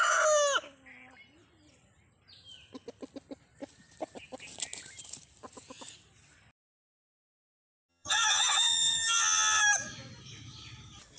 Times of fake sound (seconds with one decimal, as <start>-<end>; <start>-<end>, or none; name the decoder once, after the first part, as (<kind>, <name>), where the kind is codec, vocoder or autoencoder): 7.9-9.6 (vocoder, HiFi-GAN)